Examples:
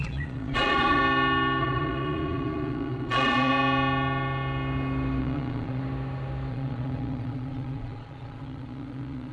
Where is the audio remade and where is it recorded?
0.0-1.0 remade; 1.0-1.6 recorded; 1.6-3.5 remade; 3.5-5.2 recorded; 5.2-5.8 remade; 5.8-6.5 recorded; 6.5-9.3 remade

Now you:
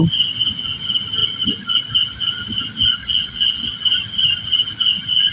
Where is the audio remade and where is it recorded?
0.0-3.0 recorded; 3.0-3.7 remade; 3.7-5.3 recorded

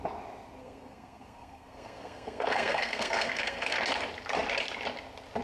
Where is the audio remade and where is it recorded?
0.0-0.6 recorded; 0.6-3.8 remade; 3.8-5.4 recorded

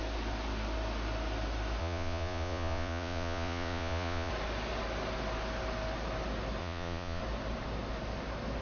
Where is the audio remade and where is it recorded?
0.0-1.8 recorded; 1.8-4.3 remade; 4.3-6.6 recorded; 6.6-7.2 remade; 7.2-8.6 recorded

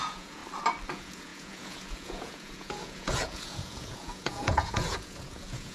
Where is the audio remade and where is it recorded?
0.0-0.4 remade; 0.4-0.9 recorded; 0.9-5.7 remade

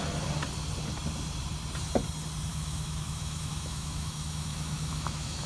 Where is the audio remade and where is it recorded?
0.0-2.5 recorded; 2.5-5.5 remade